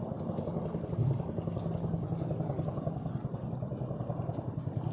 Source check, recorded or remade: recorded